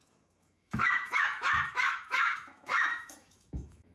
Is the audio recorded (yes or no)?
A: no